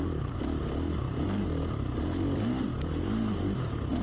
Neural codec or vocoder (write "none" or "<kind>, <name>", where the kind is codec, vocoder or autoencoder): vocoder, BigVGAN v2